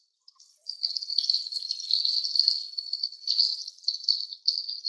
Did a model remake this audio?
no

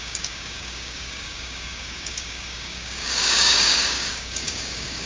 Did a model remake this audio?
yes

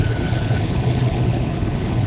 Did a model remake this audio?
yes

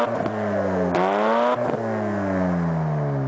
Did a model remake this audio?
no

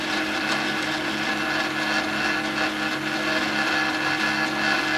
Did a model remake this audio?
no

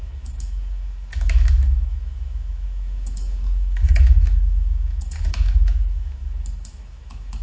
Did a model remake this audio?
yes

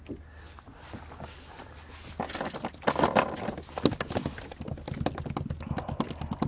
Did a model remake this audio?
no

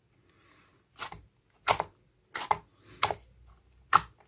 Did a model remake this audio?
no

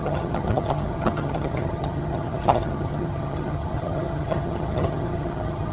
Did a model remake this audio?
yes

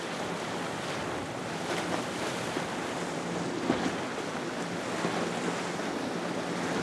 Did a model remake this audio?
no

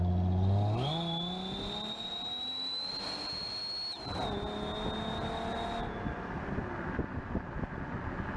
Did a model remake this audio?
no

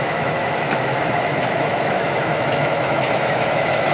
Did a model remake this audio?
yes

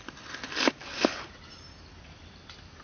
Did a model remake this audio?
no